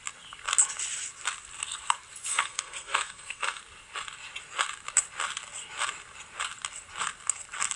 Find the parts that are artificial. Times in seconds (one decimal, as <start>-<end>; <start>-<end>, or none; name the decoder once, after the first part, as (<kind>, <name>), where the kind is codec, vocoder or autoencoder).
2.3-3.6 (codec, SNAC)